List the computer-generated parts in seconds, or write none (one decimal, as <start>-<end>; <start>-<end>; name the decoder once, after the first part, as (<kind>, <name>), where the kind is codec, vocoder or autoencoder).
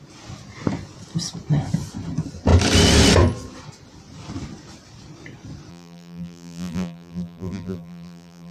5.7-8.5 (vocoder, BigVGAN v2)